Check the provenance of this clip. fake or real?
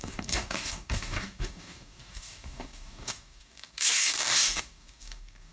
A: fake